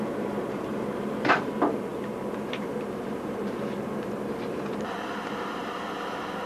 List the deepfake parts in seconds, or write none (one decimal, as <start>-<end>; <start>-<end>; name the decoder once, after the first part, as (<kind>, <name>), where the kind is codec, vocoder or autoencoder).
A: 0.0-6.5 (vocoder, BigVGAN v2)